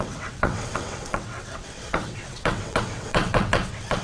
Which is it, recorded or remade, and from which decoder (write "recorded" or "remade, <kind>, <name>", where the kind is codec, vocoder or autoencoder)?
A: remade, vocoder, WaveNeXt